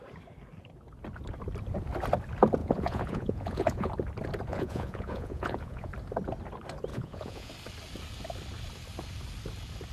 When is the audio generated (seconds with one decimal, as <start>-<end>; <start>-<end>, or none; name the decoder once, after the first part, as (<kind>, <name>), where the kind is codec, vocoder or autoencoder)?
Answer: 2.6-3.9 (vocoder, Vocos); 4.5-5.9; 6.9-7.5